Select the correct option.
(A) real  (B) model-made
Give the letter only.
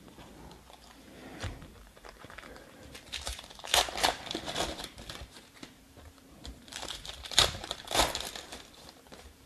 B